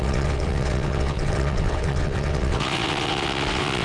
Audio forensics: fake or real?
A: fake